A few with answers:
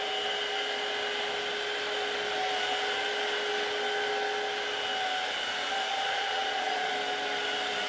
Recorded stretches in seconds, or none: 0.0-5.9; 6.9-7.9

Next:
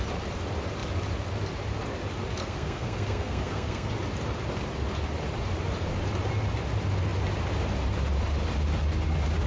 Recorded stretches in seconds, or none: 0.0-2.4; 3.9-9.5